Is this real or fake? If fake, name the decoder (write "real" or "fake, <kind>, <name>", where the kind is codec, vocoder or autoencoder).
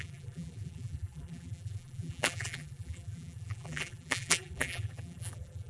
fake, vocoder, BigVGAN v2